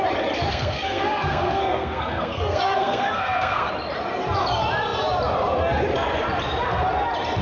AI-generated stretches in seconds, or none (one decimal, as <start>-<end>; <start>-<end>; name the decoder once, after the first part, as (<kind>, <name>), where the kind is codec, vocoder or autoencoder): 0.5-3.7 (codec, SNAC)